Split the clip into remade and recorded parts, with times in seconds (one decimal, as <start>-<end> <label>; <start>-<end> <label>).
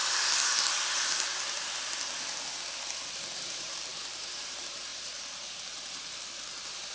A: 0.0-3.1 recorded; 3.1-6.9 remade